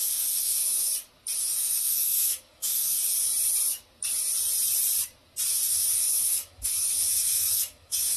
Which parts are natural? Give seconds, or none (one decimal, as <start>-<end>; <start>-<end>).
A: 0.9-1.4; 3.3-5.5